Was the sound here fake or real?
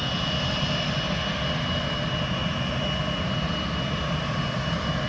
real